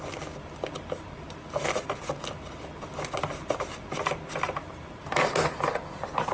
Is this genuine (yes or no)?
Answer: yes